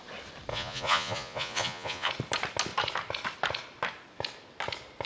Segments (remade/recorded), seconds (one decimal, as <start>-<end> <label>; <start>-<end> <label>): 0.0-0.5 recorded; 0.5-2.1 remade; 2.1-5.1 recorded